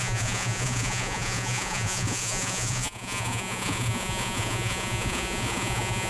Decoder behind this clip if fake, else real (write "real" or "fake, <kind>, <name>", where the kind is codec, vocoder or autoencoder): fake, vocoder, Vocos